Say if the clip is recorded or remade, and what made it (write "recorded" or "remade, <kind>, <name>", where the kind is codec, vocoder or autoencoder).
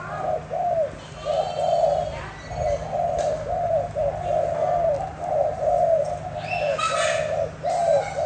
recorded